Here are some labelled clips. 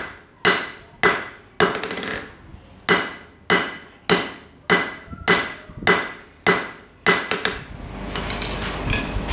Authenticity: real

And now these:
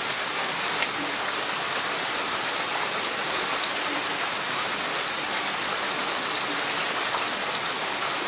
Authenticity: real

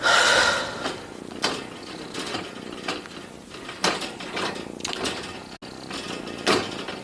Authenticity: real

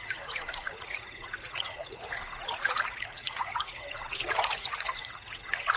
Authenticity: fake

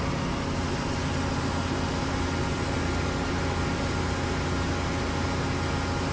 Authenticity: real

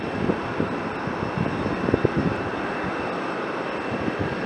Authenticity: real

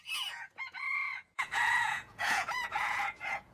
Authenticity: fake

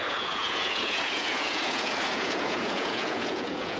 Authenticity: fake